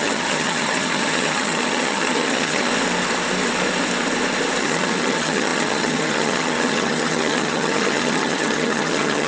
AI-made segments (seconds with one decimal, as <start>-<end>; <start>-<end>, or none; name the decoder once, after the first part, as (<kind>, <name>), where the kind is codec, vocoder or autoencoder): 0.0-2.7 (vocoder, HiFi-GAN); 4.6-9.3